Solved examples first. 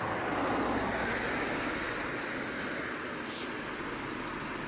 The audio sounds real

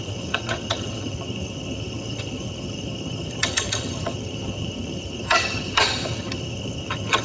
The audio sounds fake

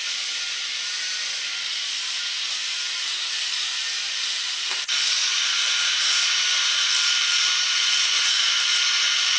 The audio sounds fake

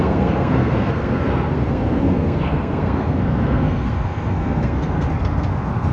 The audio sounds fake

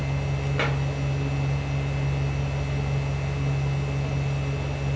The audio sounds real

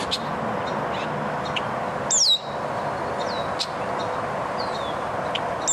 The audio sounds real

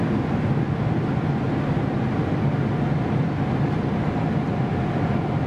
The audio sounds real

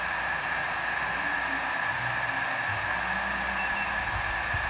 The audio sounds real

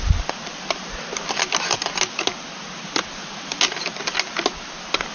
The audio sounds real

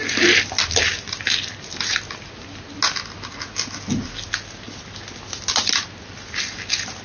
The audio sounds real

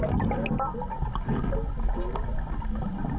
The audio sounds real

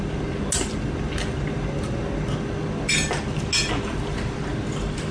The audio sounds real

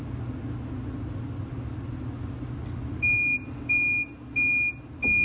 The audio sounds real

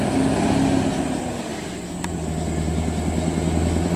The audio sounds real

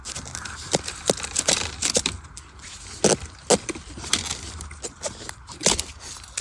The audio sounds real